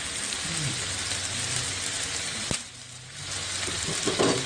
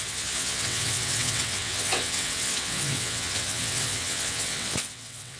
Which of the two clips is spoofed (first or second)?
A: second